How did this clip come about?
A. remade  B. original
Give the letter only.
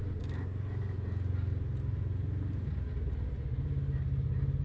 B